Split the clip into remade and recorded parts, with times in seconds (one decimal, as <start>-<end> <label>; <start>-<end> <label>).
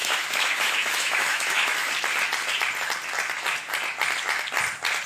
0.0-1.9 remade; 1.9-5.1 recorded